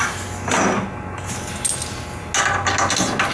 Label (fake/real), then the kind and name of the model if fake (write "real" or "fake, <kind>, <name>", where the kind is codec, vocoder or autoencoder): real